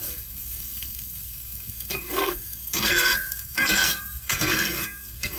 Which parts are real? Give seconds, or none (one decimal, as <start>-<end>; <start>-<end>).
none